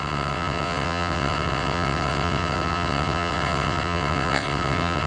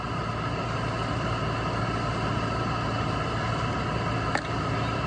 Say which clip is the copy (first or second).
first